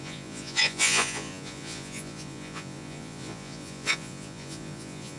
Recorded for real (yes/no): no